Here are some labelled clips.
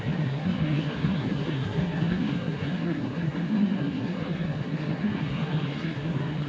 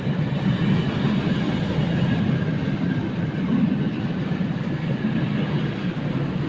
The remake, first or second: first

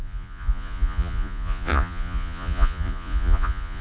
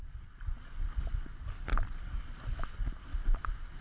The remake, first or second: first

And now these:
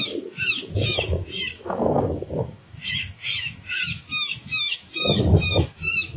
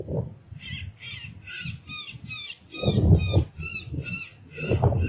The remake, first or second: first